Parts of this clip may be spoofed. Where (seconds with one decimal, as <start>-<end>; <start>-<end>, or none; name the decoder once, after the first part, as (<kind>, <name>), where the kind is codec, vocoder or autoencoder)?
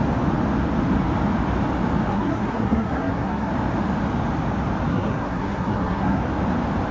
2.1-3.5 (codec, SNAC); 4.9-6.2